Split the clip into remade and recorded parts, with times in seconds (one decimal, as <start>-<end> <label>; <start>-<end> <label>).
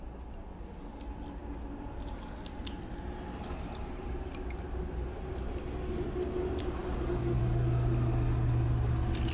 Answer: 0.0-9.3 recorded